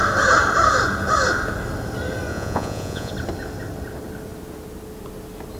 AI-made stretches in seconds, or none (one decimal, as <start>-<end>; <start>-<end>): 2.3-3.1